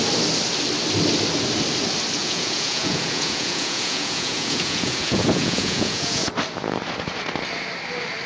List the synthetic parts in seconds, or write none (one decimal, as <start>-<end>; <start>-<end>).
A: 2.2-6.3